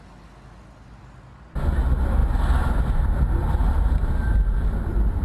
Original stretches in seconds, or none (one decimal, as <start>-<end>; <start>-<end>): 0.0-2.2; 4.4-5.2